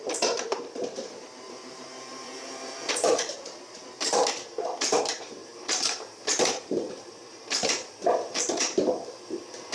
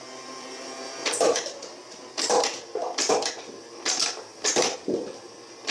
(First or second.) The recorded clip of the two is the second